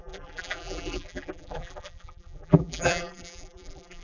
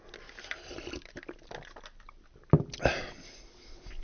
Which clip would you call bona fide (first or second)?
second